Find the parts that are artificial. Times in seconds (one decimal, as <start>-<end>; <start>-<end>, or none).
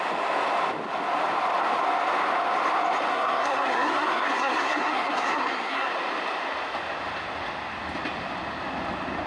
3.1-5.9